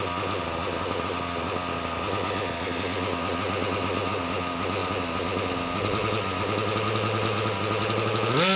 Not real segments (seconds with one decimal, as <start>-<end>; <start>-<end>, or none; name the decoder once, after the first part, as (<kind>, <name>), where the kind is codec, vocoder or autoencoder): none